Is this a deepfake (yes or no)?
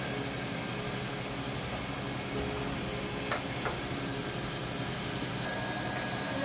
no